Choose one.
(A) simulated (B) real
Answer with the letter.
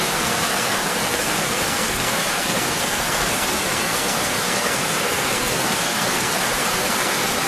A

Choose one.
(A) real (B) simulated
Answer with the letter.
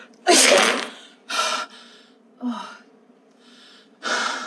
B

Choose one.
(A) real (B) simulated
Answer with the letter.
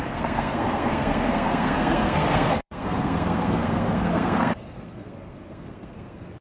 B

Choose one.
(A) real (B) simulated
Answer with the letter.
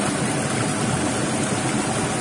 A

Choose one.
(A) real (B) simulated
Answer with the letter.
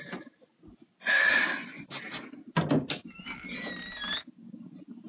A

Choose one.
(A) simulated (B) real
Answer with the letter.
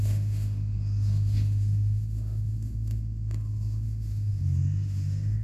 A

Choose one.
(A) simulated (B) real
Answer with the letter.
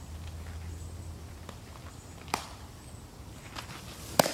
B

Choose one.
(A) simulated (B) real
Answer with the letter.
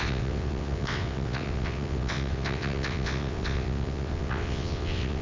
A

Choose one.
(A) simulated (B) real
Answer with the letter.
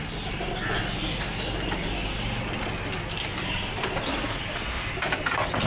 B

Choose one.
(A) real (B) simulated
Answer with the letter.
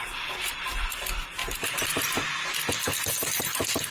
A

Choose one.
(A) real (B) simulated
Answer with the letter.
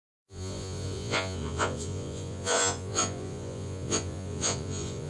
B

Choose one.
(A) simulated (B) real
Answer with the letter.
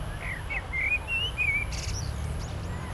B